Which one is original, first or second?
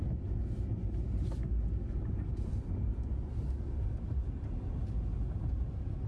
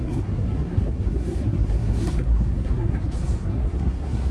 first